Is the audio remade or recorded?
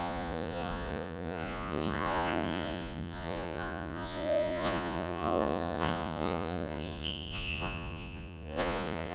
remade